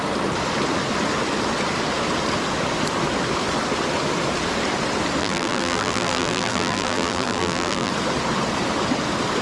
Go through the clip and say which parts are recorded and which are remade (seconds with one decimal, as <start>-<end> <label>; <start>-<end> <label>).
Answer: 0.0-5.2 recorded; 5.2-7.9 remade; 7.9-9.4 recorded